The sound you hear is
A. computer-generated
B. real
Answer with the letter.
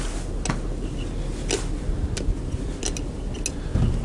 B